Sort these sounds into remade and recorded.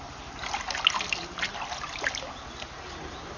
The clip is recorded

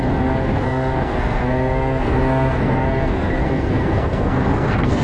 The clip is remade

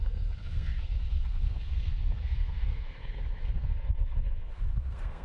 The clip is remade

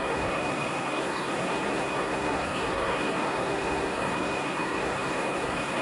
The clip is remade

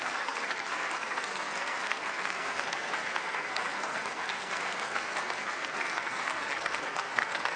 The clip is remade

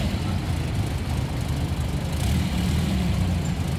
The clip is recorded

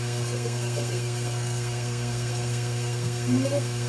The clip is remade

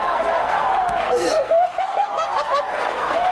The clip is remade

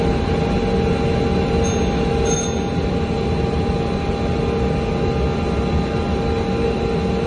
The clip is recorded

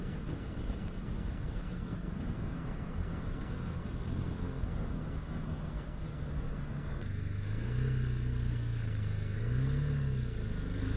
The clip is remade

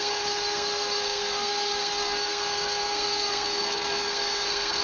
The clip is remade